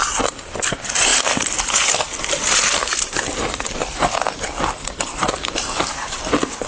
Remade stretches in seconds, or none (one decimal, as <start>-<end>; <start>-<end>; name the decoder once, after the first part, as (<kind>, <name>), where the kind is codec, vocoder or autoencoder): 0.0-6.7 (vocoder, BigVGAN v2)